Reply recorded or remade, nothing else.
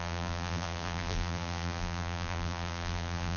remade